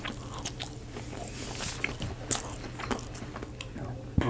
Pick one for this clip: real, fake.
real